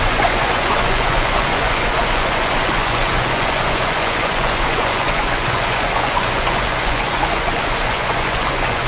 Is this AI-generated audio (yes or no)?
yes